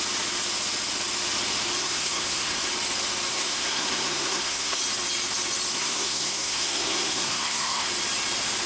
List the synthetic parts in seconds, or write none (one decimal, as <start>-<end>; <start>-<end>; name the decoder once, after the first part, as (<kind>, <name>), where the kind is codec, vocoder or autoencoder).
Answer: 1.8-2.7 (codec, SNAC); 3.3-4.8; 5.7-7.9